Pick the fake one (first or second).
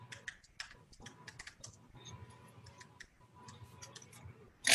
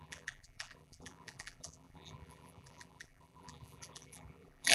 second